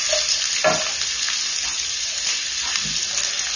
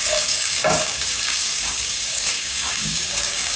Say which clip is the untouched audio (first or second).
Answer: first